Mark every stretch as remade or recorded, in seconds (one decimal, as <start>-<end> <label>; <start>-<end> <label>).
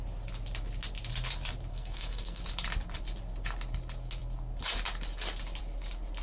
0.0-1.7 recorded; 1.7-2.4 remade; 2.4-6.2 recorded